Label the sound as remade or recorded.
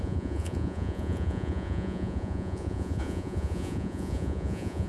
remade